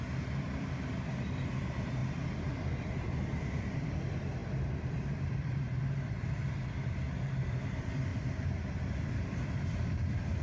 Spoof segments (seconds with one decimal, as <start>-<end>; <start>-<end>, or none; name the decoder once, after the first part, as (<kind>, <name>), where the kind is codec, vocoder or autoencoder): 0.0-2.0 (vocoder, BigVGAN v2); 3.4-8.1; 9.1-10.4